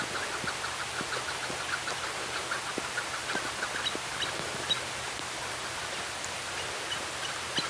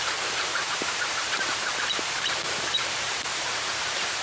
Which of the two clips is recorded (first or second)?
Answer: first